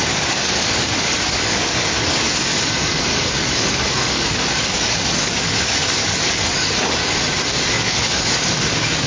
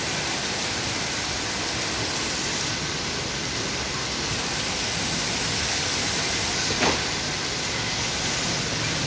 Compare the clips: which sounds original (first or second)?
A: second